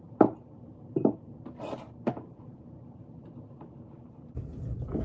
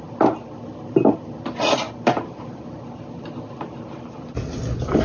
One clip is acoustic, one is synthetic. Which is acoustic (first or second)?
second